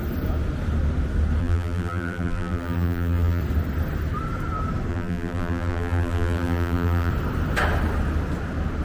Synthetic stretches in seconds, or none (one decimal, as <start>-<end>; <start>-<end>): 1.4-3.4; 4.9-7.1